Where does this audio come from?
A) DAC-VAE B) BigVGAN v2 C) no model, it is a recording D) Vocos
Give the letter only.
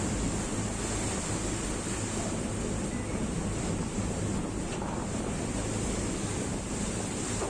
C